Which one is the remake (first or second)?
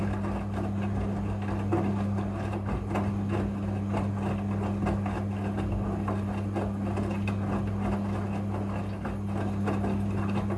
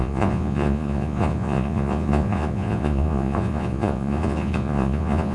second